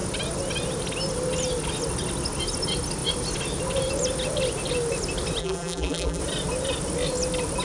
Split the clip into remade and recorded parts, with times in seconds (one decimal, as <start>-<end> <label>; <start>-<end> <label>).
0.0-5.4 recorded; 5.4-6.2 remade; 6.2-7.6 recorded